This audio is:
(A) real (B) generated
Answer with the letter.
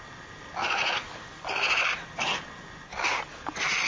A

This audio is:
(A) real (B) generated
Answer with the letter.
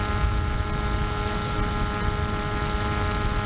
A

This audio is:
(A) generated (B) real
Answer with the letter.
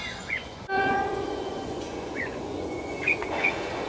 A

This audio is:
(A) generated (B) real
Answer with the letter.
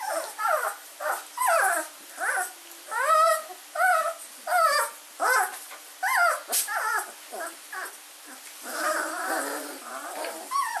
B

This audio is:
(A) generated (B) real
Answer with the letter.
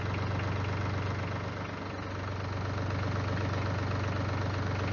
B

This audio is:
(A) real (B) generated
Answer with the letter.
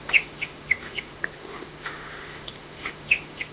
B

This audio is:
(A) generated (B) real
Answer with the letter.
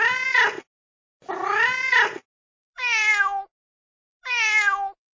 B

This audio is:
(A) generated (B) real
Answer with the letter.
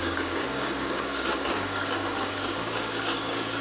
A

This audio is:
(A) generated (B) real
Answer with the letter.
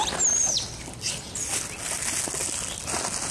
B